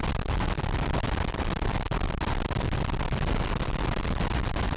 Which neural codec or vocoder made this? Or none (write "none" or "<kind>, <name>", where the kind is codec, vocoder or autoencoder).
none